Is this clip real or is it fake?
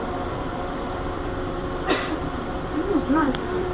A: fake